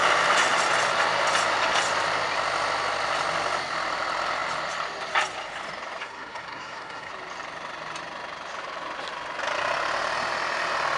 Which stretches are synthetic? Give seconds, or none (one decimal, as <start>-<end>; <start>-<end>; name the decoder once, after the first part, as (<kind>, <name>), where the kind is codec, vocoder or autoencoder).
6.0-7.1 (codec, SNAC)